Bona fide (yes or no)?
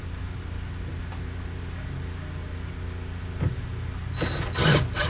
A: yes